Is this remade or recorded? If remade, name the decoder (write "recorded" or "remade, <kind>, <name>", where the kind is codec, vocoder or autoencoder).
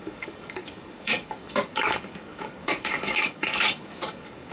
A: remade, codec, DAC